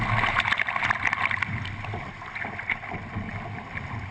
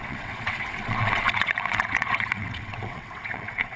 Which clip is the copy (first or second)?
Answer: second